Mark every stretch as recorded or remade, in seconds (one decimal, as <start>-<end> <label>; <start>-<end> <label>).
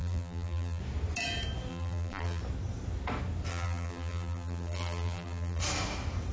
0.0-0.8 remade; 0.8-1.7 recorded; 1.7-2.4 remade; 2.4-3.5 recorded; 3.5-5.6 remade; 5.6-6.3 recorded